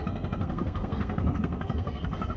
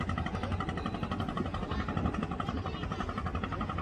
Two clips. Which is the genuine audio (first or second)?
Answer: second